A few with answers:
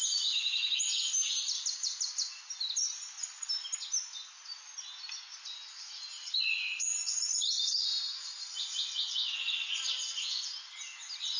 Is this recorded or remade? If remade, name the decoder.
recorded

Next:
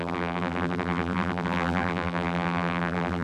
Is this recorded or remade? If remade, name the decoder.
remade, vocoder, BigVGAN v2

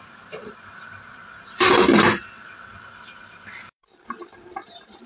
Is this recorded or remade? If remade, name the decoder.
remade, vocoder, BigVGAN v2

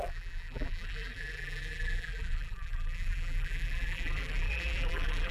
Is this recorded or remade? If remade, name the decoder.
remade, vocoder, BigVGAN v2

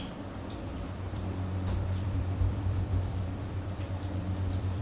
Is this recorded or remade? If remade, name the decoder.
remade, vocoder, BigVGAN v2